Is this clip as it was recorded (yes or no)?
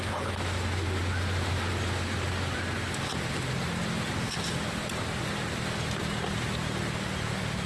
yes